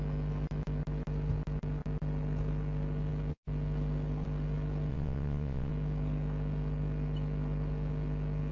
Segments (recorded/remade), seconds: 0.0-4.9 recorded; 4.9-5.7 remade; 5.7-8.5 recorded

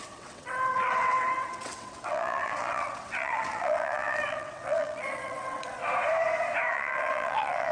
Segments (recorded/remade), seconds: 0.0-5.8 remade; 5.8-6.7 recorded; 6.7-7.7 remade

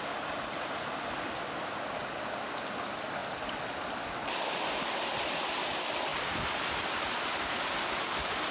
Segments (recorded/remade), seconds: 0.0-6.1 recorded; 6.1-7.6 remade; 7.6-8.5 recorded

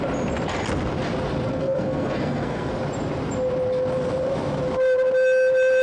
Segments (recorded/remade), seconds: 0.0-1.6 recorded; 1.6-2.7 remade; 2.7-5.8 recorded

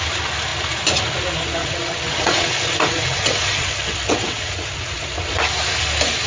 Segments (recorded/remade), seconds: 0.0-1.6 recorded; 1.6-5.4 remade; 5.4-6.3 recorded

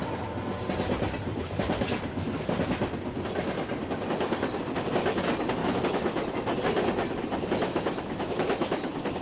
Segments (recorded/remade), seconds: 0.0-5.6 recorded; 5.6-6.4 remade; 6.4-7.7 recorded; 7.7-9.2 remade

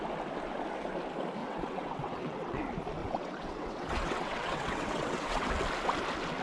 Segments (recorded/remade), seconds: 0.0-1.4 recorded; 1.4-2.6 remade; 2.6-3.0 recorded; 3.0-5.5 remade; 5.5-6.4 recorded

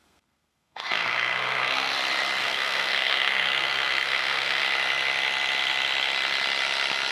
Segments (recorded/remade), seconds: 0.0-1.9 remade; 1.9-2.4 recorded; 2.4-4.6 remade; 4.6-7.1 recorded